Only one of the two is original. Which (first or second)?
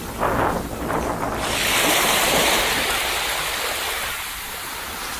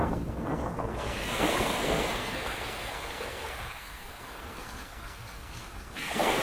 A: first